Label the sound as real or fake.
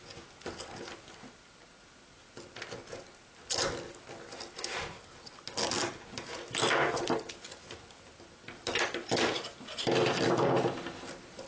real